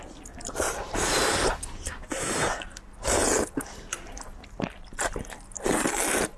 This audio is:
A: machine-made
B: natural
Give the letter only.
B